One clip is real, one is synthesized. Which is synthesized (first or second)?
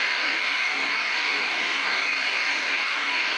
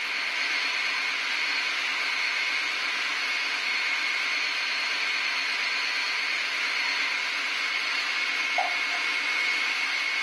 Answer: first